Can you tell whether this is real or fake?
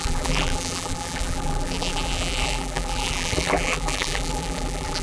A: fake